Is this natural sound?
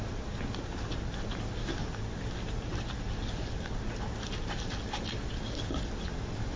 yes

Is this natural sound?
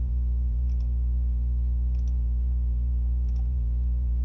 no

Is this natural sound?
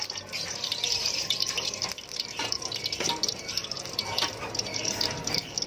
no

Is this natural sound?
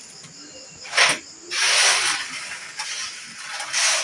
yes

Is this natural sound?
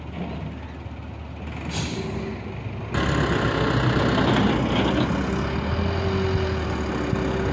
yes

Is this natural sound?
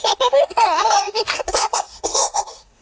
no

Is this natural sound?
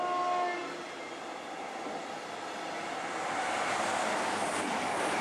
yes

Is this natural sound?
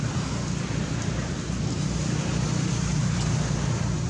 yes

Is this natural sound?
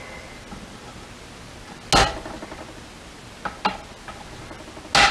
yes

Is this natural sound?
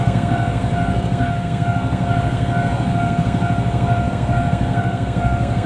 no